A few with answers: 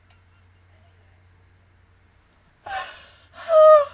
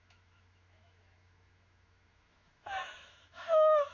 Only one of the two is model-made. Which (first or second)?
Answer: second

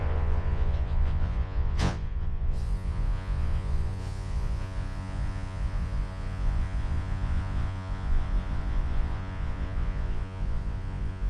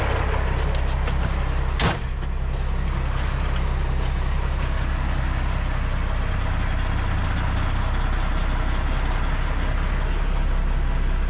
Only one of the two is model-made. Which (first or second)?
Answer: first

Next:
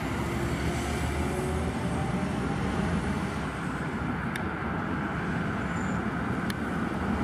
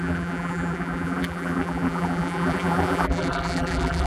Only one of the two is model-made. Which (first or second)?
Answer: second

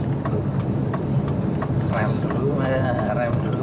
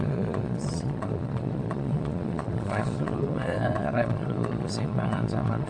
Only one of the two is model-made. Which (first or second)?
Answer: second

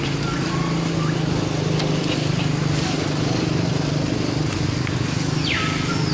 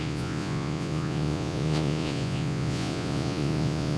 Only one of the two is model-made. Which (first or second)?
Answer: second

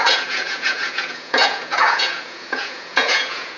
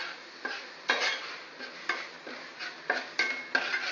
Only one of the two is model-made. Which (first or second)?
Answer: first